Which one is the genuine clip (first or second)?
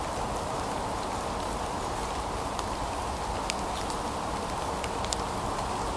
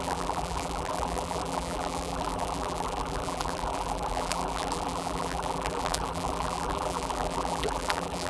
first